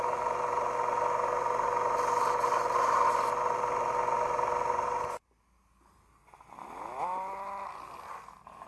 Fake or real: real